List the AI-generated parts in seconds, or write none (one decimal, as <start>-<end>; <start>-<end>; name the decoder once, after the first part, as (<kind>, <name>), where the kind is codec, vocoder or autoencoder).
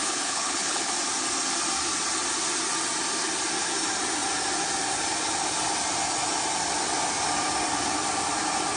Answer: 0.0-0.9 (codec, HILCodec)